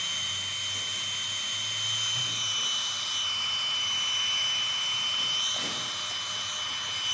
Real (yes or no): yes